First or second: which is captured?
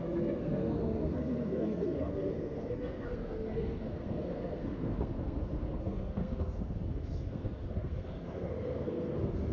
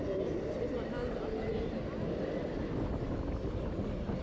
second